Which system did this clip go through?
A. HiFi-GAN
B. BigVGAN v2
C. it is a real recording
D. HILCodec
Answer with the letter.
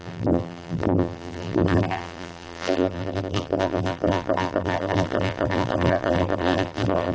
B